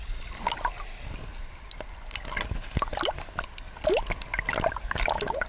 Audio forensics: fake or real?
real